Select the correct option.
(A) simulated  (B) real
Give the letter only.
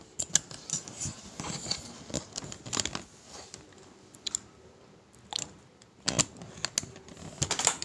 B